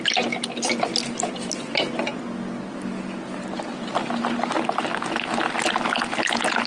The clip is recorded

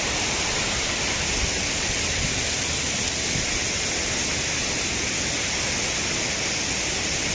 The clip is recorded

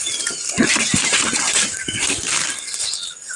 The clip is recorded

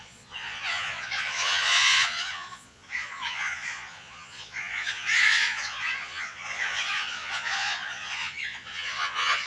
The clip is remade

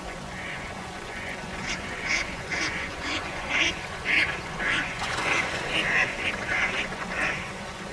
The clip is remade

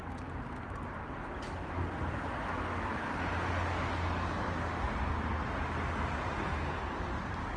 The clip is recorded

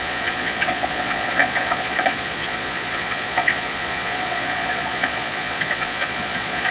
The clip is remade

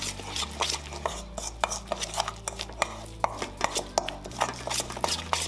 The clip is recorded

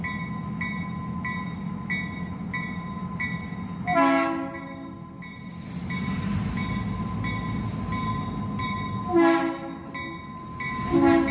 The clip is recorded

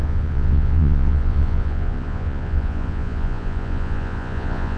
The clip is remade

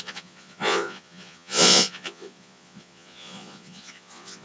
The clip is remade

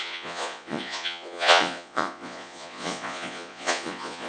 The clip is remade